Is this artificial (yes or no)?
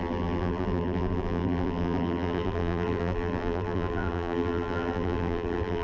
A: yes